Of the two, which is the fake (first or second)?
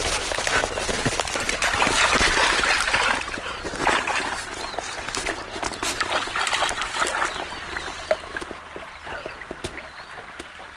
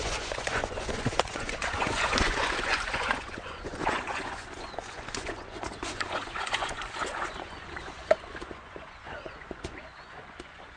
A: second